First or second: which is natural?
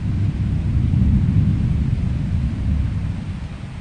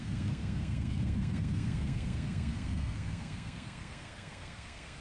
first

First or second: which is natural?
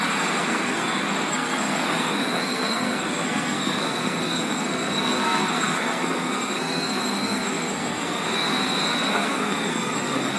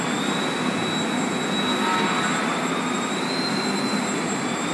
second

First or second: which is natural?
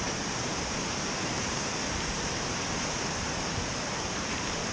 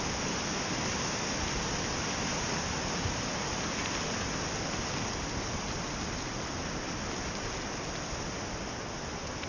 second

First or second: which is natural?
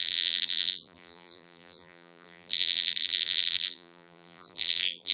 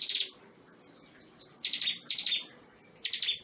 second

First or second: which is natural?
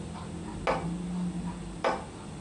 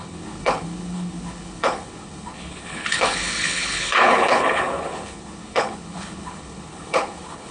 first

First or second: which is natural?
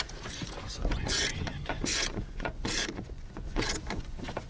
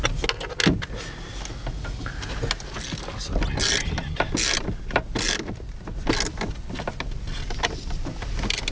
second